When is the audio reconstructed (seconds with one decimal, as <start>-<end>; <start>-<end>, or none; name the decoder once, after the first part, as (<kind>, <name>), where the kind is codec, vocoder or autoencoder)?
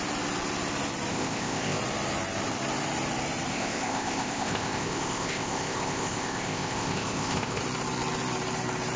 1.1-1.8 (codec, ZipCodec); 3.5-7.6